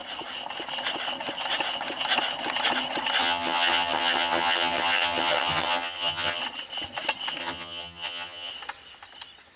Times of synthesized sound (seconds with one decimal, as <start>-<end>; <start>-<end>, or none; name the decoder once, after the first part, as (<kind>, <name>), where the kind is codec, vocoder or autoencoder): 3.2-6.4 (vocoder, HiFi-GAN); 7.4-8.5